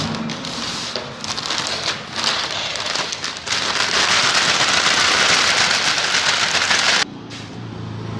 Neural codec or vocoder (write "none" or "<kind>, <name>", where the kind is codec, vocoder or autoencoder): none